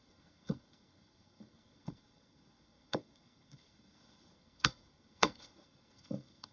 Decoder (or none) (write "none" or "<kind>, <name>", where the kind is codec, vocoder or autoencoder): codec, SNAC